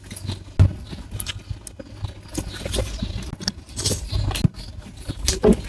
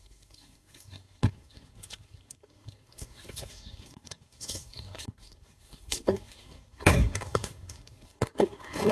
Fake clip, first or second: second